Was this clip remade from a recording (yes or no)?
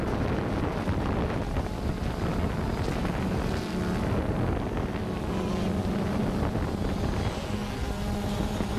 no